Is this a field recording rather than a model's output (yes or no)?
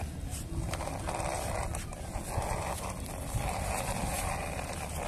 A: yes